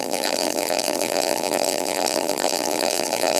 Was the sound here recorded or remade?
remade